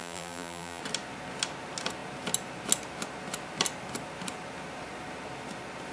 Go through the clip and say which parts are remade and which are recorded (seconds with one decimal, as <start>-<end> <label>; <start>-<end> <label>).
0.0-0.8 remade; 0.8-5.9 recorded